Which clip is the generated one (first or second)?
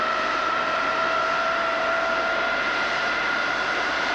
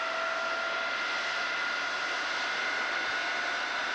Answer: first